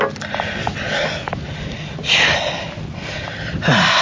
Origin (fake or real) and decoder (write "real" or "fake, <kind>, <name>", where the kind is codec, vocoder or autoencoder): real